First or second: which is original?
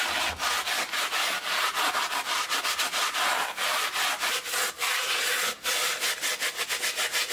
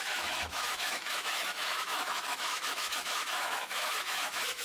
first